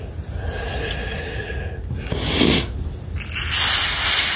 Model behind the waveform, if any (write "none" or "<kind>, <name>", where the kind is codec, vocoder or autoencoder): none